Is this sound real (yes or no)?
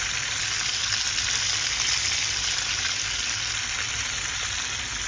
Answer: yes